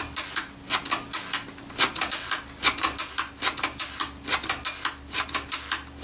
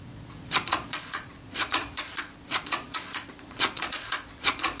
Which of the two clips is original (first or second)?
first